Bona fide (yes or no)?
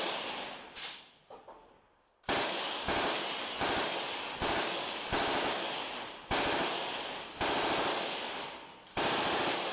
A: yes